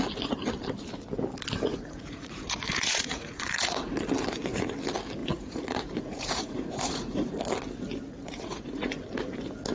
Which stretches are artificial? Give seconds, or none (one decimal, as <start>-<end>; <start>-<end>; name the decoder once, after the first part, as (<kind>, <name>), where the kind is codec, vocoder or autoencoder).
1.7-4.0 (vocoder, Vocos); 5.2-7.3; 8.2-9.0